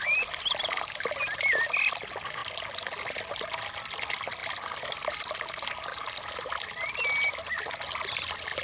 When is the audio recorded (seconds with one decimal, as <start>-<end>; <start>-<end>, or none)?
0.0-8.6